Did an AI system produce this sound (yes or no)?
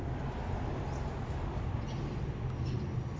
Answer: no